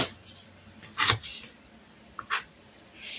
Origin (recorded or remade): recorded